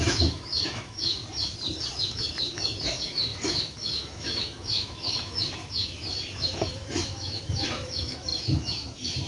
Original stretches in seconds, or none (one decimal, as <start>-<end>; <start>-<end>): 1.2-1.9